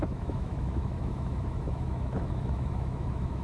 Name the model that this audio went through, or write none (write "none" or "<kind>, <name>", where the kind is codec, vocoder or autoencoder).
autoencoder, DAC-VAE